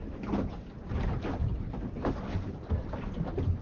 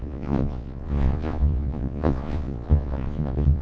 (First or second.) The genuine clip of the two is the first